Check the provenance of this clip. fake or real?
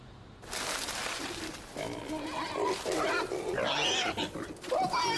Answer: real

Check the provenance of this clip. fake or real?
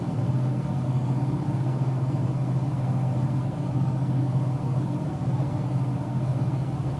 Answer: fake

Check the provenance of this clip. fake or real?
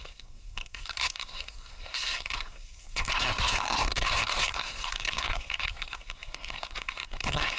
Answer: fake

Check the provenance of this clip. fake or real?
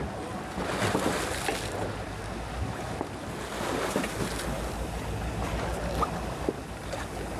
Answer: real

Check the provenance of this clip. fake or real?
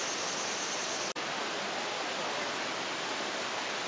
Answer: real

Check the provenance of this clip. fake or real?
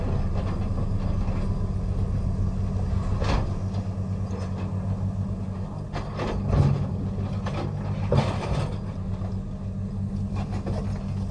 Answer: real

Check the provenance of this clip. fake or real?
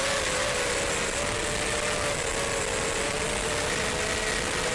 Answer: real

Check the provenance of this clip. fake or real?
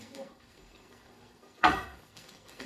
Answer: fake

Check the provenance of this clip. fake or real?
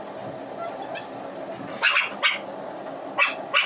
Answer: real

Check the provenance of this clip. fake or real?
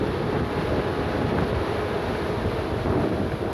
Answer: real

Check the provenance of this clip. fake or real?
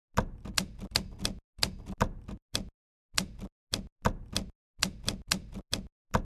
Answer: real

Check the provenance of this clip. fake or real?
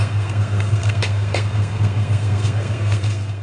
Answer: fake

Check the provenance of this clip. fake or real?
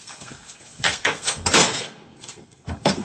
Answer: fake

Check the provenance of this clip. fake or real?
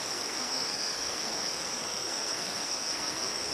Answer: fake